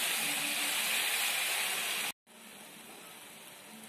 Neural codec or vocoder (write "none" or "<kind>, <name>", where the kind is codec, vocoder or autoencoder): none